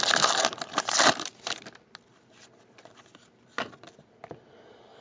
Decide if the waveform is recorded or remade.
recorded